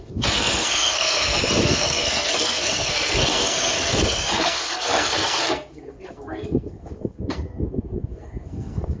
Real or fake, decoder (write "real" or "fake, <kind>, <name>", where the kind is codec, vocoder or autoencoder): fake, codec, SNAC